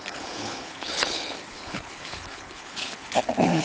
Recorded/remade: remade